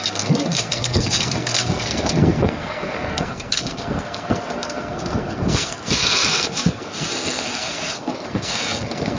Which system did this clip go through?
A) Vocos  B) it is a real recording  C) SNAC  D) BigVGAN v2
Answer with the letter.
C